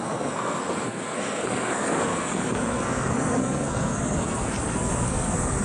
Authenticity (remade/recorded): remade